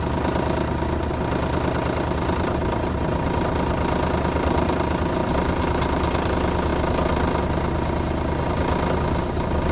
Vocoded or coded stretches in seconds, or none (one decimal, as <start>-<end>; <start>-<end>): 5.2-6.3